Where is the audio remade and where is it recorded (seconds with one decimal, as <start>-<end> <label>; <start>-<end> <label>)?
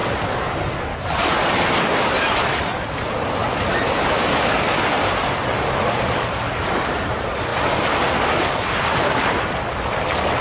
0.0-10.4 recorded